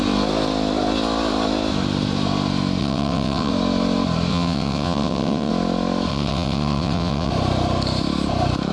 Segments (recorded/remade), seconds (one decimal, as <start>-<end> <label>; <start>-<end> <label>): 0.0-2.8 recorded; 2.8-3.5 remade; 3.5-4.3 recorded; 4.3-5.5 remade; 5.5-6.1 recorded; 6.1-7.3 remade; 7.3-8.7 recorded